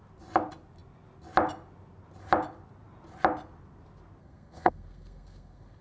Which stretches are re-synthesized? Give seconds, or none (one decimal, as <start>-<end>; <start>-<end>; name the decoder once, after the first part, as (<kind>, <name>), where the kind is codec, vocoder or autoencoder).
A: 4.2-5.8 (codec, SNAC)